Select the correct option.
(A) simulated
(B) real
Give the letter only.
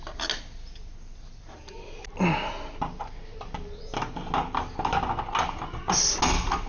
B